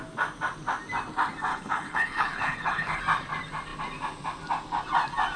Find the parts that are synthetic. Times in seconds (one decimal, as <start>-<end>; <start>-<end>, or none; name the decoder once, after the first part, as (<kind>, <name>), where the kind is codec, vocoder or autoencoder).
1.5-3.0 (codec, HILCodec)